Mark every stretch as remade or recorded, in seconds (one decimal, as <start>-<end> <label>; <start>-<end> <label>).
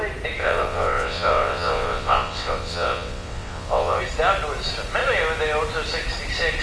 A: 0.0-0.4 recorded; 0.4-4.0 remade; 4.0-6.6 recorded